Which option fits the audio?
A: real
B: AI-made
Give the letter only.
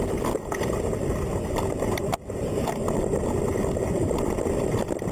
A